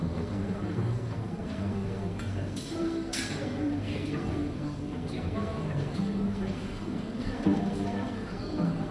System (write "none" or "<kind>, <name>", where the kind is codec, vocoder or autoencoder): codec, SNAC